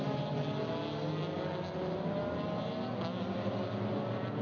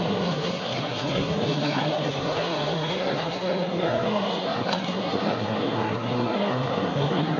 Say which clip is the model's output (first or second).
second